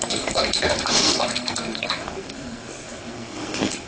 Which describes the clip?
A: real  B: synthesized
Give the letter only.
B